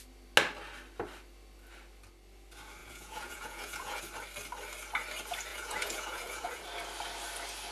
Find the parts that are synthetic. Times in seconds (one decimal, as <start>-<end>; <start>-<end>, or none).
2.8-4.0; 5.5-6.6